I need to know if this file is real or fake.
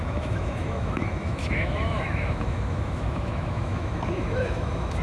fake